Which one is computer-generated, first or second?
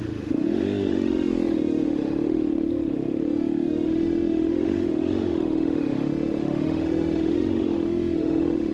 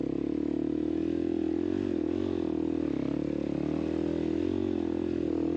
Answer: first